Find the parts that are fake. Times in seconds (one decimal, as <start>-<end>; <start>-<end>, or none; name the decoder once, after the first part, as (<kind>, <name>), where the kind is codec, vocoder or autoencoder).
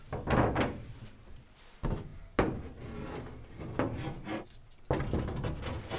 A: none